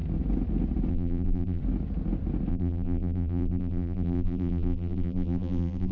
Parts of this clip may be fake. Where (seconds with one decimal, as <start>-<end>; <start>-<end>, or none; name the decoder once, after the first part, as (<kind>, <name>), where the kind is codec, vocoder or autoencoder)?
0.9-1.6 (vocoder, BigVGAN v2); 2.5-5.9